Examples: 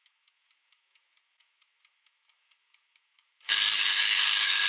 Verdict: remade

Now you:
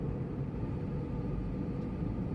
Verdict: recorded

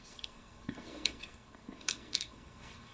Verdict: remade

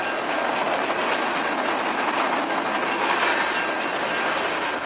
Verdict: recorded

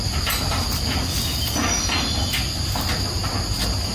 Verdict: recorded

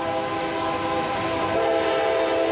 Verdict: recorded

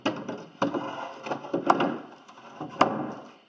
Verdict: recorded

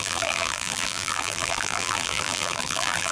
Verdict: remade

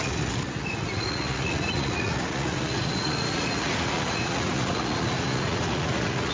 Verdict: remade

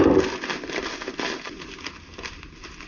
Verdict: recorded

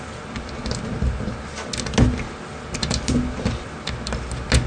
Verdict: recorded